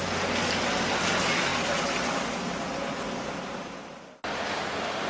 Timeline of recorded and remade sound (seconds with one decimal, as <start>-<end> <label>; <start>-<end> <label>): 0.0-5.1 recorded